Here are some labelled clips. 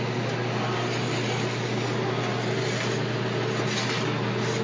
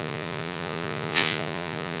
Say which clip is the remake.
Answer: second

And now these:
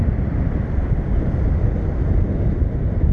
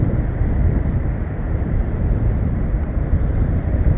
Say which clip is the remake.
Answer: second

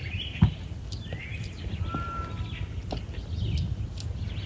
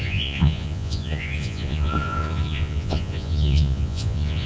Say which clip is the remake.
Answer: second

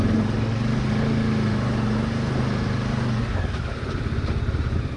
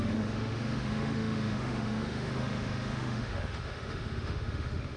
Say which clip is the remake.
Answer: second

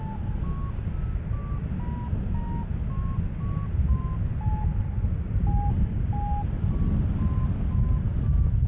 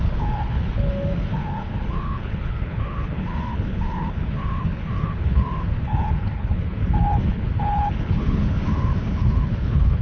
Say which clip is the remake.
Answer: second